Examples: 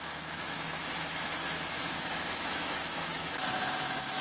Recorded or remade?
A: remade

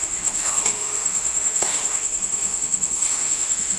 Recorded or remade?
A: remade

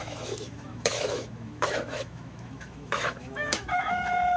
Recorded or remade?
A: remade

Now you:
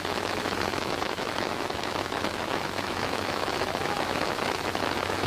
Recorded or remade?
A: remade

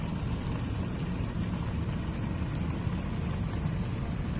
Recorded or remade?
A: recorded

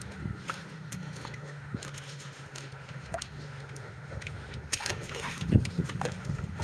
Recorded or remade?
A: remade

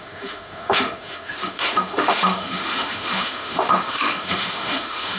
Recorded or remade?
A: remade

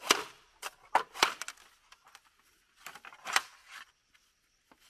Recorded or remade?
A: recorded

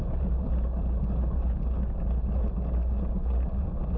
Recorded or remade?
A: recorded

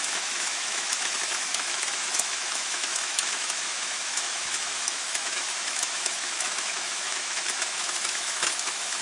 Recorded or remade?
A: remade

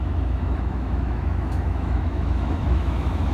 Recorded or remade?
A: remade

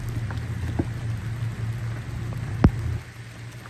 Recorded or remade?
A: recorded